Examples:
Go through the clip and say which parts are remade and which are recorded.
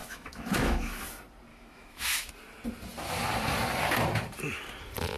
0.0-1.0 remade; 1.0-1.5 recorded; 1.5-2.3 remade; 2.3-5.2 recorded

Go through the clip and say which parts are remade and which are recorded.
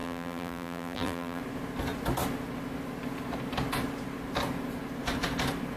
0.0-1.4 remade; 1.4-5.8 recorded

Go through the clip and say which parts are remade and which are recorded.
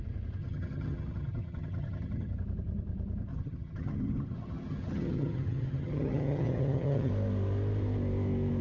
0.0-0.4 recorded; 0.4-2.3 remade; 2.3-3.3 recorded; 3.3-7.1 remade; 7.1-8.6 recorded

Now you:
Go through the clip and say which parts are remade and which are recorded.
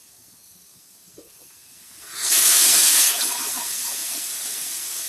0.0-5.1 remade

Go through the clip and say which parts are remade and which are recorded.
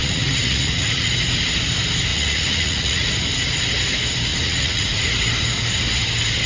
0.0-1.1 remade; 1.1-2.1 recorded; 2.1-3.1 remade; 3.1-4.3 recorded; 4.3-5.0 remade; 5.0-6.5 recorded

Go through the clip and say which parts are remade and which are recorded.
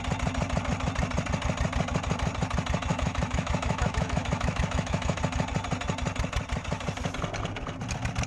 0.0-2.9 recorded; 2.9-5.2 remade; 5.2-8.3 recorded